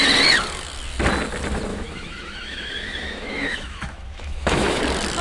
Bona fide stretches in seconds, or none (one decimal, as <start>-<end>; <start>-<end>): 0.0-1.7; 4.8-5.2